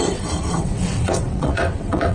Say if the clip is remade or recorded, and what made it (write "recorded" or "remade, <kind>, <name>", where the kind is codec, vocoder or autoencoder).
remade, vocoder, WaveNeXt